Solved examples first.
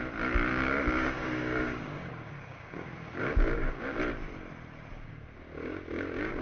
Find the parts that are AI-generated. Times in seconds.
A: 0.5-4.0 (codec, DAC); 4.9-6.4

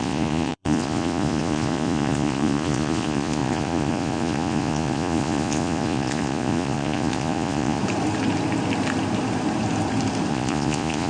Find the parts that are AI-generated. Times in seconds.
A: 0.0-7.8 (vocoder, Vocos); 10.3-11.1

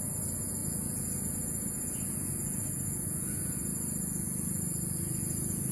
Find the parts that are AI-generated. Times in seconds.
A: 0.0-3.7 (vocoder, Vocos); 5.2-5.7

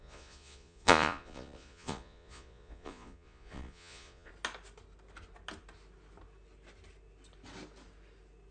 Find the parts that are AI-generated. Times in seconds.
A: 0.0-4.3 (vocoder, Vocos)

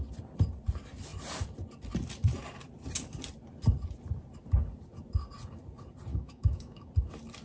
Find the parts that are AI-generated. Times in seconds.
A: 6.1-6.9 (autoencoder, DAC-VAE)

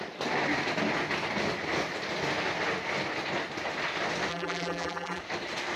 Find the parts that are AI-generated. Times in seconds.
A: 4.3-5.2 (vocoder, BigVGAN v2)

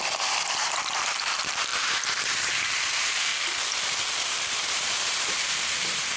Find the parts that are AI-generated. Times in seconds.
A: 0.0-3.3 (vocoder, BigVGAN v2); 4.7-6.2

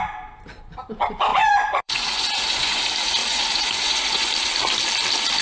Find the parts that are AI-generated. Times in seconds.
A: 1.3-2.8 (vocoder, Vocos); 3.2-4.3